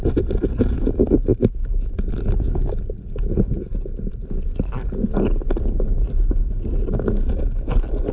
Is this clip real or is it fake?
real